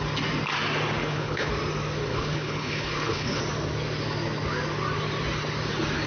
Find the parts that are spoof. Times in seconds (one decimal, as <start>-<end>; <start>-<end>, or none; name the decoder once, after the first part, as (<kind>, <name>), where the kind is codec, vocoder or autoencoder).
1.0-1.5 (codec, HILCodec); 2.1-3.4